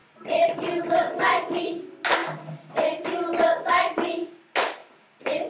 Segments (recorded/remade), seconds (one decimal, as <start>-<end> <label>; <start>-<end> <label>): 0.0-5.5 recorded